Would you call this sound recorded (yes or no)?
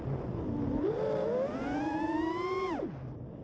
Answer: yes